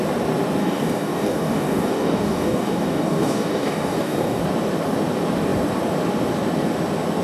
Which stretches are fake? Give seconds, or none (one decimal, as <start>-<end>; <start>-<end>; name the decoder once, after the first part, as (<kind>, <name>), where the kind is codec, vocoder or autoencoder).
0.6-4.4 (codec, DAC)